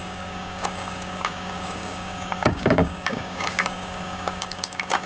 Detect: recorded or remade remade